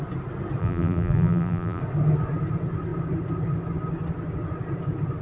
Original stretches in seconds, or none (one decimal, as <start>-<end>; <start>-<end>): 0.0-0.6; 1.8-5.2